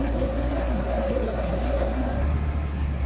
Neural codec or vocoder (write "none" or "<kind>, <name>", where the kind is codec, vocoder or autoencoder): codec, SNAC